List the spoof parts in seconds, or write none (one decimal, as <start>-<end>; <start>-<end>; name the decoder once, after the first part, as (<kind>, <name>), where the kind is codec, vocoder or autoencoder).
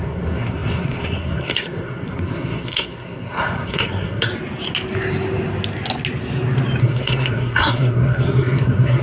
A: 0.0-4.3 (codec, SNAC); 6.8-9.0